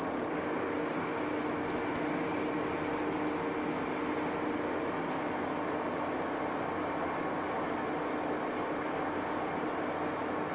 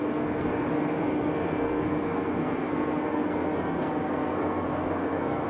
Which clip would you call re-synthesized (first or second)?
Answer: second